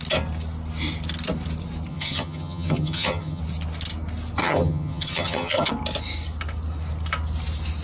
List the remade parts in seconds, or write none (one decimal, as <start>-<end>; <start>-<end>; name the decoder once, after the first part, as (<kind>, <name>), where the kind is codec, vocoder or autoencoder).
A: 1.9-3.4 (vocoder, HiFi-GAN); 4.4-5.7